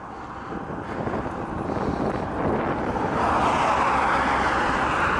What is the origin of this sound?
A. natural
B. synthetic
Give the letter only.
A